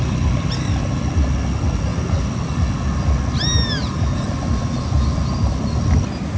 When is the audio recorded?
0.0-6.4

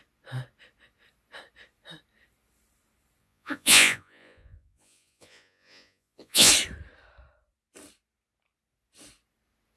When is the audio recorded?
0.0-3.2; 6.5-9.8

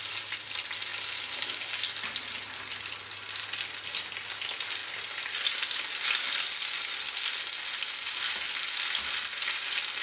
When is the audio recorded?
0.0-10.0

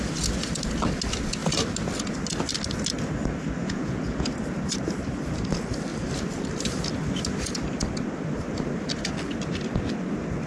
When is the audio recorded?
0.0-3.6; 4.3-10.5

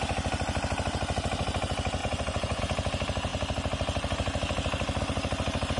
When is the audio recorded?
0.0-2.0; 2.6-5.8

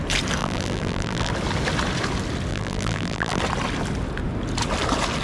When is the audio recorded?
0.0-0.4; 1.3-2.5; 3.4-5.2

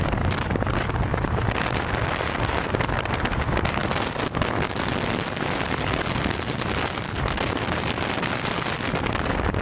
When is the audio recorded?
0.0-9.6